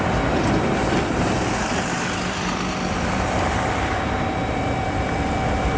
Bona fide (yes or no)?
no